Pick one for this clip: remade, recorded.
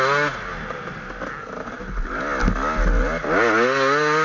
recorded